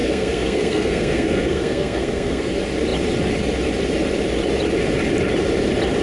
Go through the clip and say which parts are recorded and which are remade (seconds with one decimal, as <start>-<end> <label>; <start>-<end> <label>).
0.0-2.5 remade; 2.5-6.0 recorded